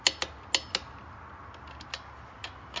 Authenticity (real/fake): real